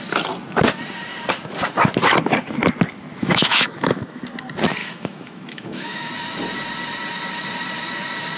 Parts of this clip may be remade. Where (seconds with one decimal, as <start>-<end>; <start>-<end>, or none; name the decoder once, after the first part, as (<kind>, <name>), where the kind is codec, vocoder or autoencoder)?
3.2-4.2 (autoencoder, DAC-VAE); 4.8-6.1